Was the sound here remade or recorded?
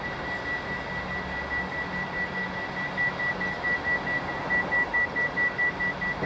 recorded